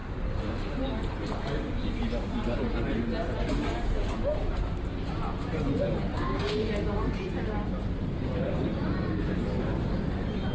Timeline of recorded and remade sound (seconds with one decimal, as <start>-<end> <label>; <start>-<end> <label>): 0.0-6.1 recorded; 6.1-6.7 remade; 6.7-10.5 recorded